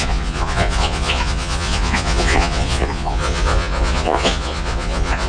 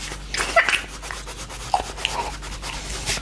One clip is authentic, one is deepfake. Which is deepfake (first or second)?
first